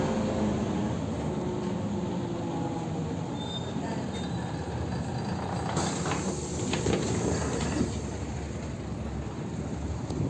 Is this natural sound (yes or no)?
yes